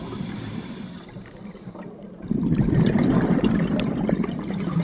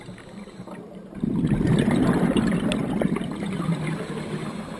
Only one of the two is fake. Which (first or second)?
first